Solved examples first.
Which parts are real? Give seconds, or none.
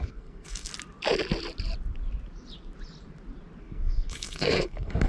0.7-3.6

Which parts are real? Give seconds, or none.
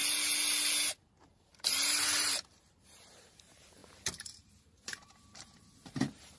0.0-1.1; 1.5-2.5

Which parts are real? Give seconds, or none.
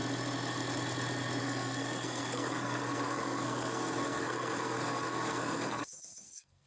0.0-1.4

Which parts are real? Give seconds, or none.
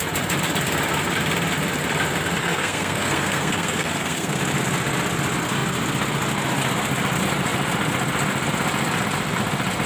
0.0-2.4; 4.4-9.9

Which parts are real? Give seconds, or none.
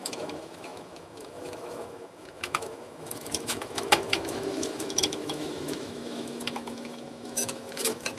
none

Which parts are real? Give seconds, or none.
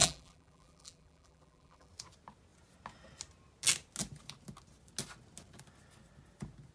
1.9-6.7